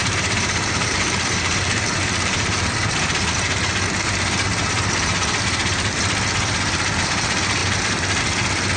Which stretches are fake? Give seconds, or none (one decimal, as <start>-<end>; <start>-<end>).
0.0-2.7